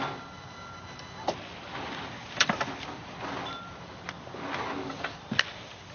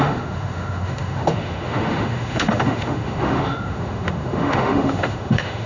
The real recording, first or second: first